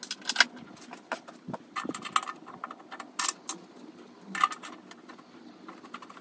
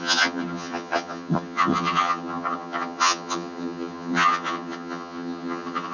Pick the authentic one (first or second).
first